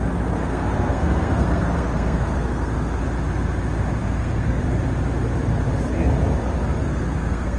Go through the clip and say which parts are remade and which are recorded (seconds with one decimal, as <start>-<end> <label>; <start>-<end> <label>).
0.0-0.4 recorded; 0.4-3.0 remade; 3.0-4.0 recorded; 4.0-4.6 remade; 4.6-6.8 recorded; 6.8-7.6 remade